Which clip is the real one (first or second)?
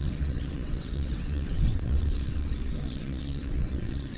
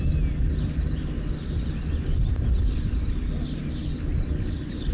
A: second